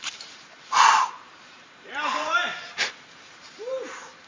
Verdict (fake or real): fake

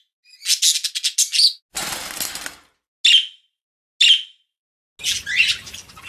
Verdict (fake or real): real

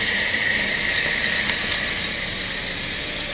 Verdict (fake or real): real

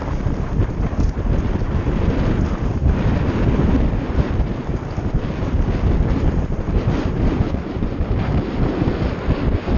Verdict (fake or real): real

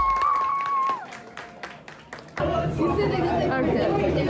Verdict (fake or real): real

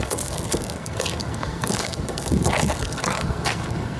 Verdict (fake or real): fake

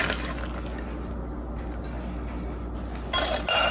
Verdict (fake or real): real